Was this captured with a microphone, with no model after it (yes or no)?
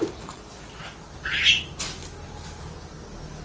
yes